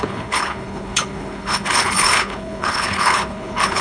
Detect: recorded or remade remade